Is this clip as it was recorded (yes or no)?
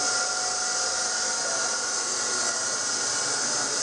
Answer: yes